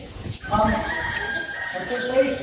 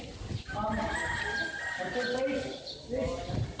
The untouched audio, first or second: second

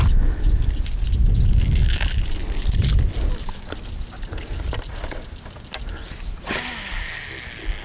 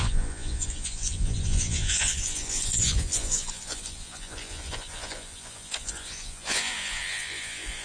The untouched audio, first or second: first